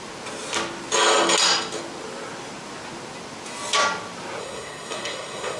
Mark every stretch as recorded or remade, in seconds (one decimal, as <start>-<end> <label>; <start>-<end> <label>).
0.0-4.4 recorded; 4.4-5.6 remade